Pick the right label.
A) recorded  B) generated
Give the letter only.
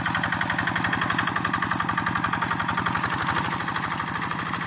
A